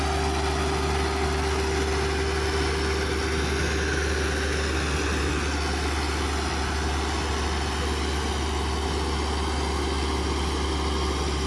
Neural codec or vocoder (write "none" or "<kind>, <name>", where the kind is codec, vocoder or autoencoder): none